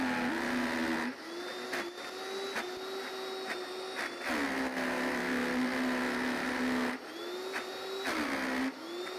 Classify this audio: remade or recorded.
recorded